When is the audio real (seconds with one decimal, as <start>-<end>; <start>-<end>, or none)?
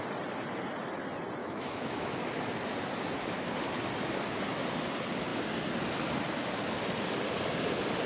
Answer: 0.0-1.4; 2.1-8.1